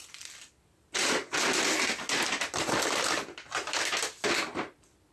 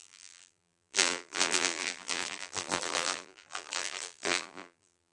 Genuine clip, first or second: first